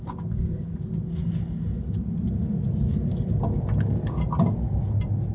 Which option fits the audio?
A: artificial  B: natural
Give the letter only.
B